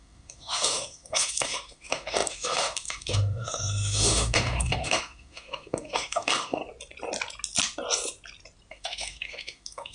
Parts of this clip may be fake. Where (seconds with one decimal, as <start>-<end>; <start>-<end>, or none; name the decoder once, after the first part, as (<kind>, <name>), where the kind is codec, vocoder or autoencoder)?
0.0-6.6 (autoencoder, DAC-VAE); 8.7-9.9

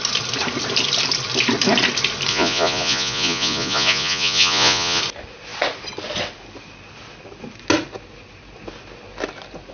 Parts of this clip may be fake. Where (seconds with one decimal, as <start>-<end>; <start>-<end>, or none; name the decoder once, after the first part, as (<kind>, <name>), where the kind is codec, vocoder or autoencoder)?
2.3-5.0 (vocoder, Vocos)